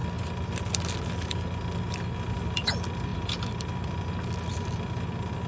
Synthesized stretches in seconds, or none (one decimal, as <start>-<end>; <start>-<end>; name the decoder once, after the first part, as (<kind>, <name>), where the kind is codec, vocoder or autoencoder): 2.4-5.5 (vocoder, BigVGAN v2)